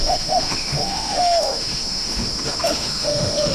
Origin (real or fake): fake